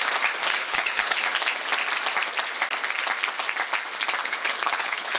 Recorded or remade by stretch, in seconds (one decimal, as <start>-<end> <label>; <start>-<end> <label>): 0.0-0.6 recorded; 0.6-1.2 remade; 1.2-4.2 recorded; 4.2-5.2 remade